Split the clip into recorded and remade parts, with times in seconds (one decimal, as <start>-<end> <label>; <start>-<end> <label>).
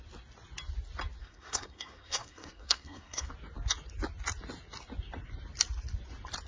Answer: 0.0-1.2 recorded; 1.2-3.3 remade; 3.3-6.5 recorded